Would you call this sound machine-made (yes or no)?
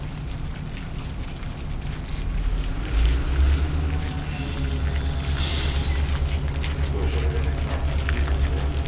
no